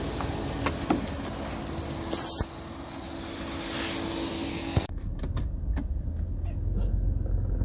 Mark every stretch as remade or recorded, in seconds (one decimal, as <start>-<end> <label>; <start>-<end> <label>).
0.0-4.5 recorded; 4.5-5.1 remade; 5.1-7.6 recorded